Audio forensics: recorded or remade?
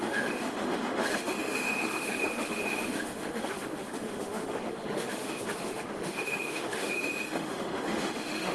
remade